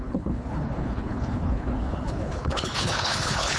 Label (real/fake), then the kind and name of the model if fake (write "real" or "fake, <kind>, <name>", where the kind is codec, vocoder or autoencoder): fake, codec, HILCodec